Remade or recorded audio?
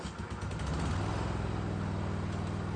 recorded